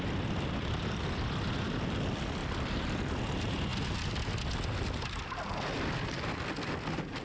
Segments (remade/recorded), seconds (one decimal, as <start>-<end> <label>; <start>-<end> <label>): 0.0-2.4 recorded; 2.4-3.2 remade; 3.2-7.2 recorded